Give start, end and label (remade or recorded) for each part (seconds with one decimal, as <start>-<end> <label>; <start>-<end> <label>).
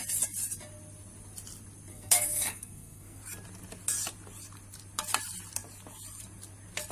0.0-1.9 recorded; 1.9-3.2 remade; 3.2-6.9 recorded